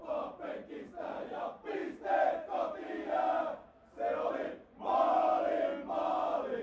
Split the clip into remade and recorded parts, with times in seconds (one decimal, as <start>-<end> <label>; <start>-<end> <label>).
0.0-0.7 recorded; 0.7-1.8 remade; 1.8-4.3 recorded; 4.3-5.2 remade; 5.2-6.6 recorded